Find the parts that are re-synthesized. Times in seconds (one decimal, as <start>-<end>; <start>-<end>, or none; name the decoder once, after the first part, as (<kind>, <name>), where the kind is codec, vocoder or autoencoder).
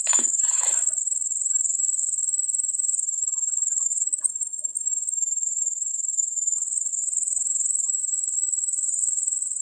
0.0-9.6 (autoencoder, DAC-VAE)